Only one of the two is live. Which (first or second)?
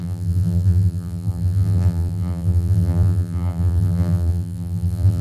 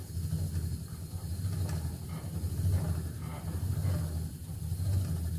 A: second